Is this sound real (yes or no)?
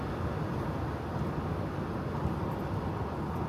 yes